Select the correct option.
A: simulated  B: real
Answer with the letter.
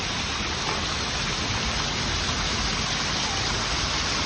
B